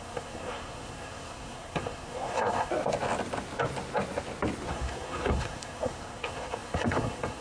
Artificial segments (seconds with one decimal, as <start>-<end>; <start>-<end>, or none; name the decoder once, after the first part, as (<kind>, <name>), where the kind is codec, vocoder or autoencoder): 0.0-2.7 (codec, SNAC); 4.7-7.4